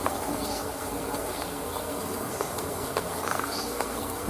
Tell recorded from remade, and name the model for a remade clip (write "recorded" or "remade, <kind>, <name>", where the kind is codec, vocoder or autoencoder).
remade, codec, SNAC